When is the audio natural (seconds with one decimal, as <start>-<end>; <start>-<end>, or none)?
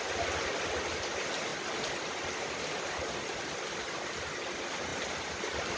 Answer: 0.0-1.5; 3.9-5.8